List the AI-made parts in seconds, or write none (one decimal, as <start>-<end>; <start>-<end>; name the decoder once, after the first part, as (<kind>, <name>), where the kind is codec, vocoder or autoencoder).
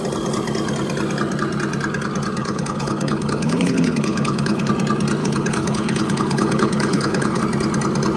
2.4-4.7 (codec, HILCodec); 5.2-7.4